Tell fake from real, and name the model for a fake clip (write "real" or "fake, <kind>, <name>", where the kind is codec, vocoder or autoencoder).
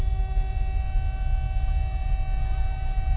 real